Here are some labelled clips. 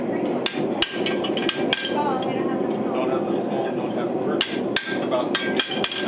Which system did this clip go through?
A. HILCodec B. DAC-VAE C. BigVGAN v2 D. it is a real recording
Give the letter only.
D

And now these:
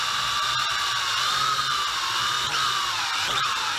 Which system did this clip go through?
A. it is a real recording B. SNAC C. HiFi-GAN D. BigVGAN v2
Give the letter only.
D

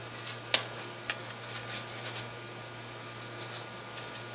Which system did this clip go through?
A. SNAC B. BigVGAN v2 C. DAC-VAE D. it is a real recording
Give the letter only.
D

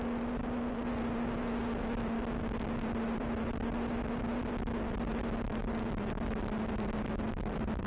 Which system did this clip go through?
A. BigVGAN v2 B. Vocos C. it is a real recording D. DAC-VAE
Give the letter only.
A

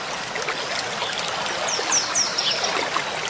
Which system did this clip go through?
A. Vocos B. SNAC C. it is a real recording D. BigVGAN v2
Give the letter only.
C